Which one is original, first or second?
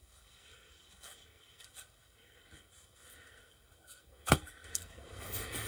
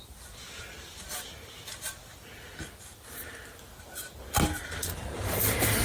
second